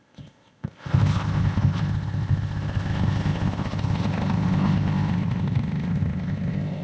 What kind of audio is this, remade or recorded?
remade